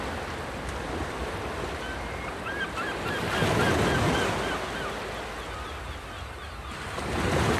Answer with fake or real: real